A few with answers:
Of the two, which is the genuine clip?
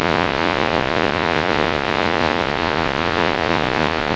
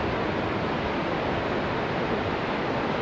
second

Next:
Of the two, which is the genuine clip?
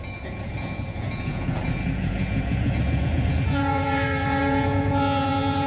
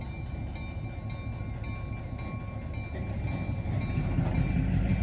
second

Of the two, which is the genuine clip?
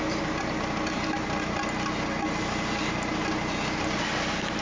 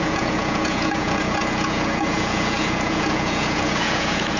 first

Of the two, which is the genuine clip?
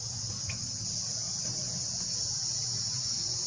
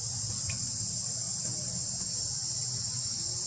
second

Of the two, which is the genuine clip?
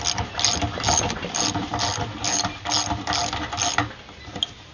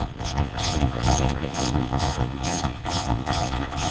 first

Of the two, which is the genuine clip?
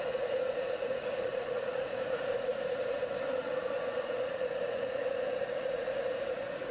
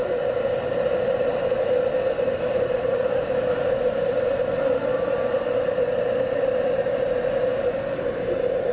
second